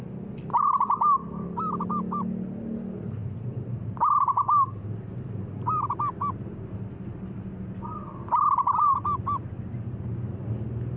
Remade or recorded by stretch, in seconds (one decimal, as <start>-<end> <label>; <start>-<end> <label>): 0.0-11.0 recorded